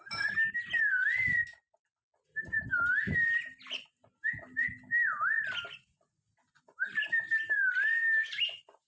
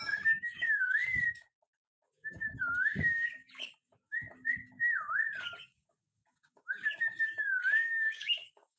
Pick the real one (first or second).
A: first